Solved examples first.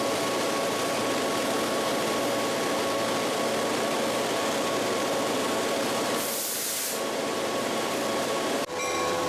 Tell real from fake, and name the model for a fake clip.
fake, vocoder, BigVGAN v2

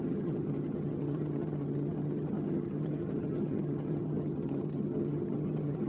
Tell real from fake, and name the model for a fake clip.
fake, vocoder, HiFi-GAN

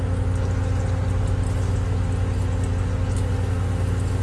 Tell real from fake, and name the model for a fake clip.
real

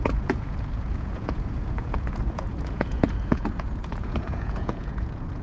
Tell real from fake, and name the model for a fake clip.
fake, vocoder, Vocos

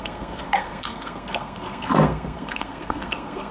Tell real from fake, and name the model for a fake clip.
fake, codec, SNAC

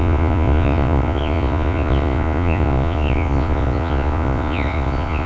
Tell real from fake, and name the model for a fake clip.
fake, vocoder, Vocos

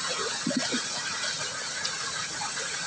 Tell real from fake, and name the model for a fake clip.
fake, vocoder, Vocos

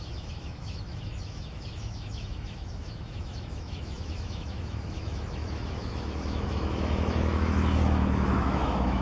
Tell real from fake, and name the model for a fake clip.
fake, autoencoder, DAC-VAE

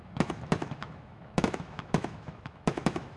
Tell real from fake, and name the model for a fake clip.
fake, autoencoder, DAC-VAE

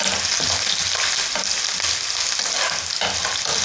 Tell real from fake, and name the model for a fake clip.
real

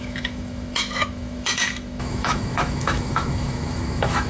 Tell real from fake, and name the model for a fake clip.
fake, autoencoder, DAC-VAE